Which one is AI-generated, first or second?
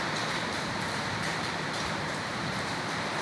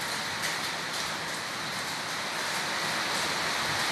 first